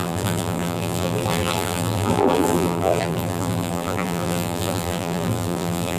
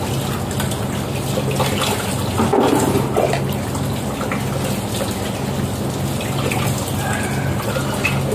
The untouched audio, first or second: second